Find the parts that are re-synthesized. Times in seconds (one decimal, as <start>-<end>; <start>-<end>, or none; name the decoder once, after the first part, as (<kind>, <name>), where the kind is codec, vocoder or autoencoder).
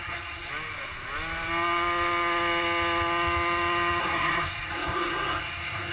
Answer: 0.0-0.5 (codec, SNAC); 4.0-5.9